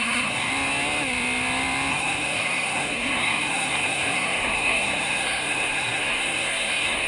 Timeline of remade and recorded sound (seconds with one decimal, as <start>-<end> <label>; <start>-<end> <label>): 0.0-0.5 remade; 0.5-1.9 recorded; 1.9-7.1 remade